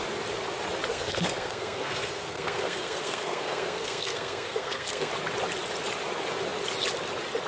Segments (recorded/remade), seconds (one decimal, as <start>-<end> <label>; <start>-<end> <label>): 0.0-0.9 recorded; 0.9-5.1 remade; 5.1-7.5 recorded